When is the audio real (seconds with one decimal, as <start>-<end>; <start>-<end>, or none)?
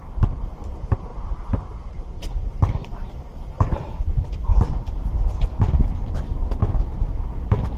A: 1.1-1.9; 3.3-4.6; 6.3-7.8